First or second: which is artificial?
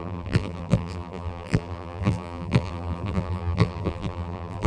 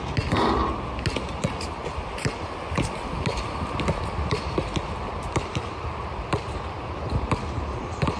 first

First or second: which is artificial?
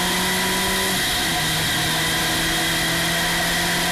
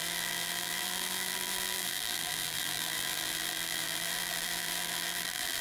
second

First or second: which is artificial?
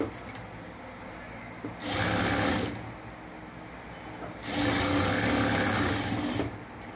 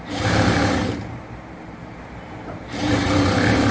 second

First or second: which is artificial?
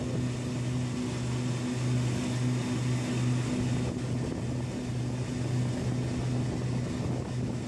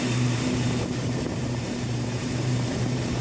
second